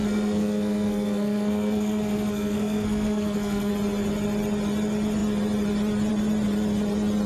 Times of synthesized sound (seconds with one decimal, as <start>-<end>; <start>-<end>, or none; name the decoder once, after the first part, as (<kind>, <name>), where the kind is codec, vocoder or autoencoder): 0.0-3.7 (codec, SNAC)